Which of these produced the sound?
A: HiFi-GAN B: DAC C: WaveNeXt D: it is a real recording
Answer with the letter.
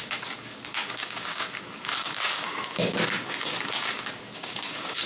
B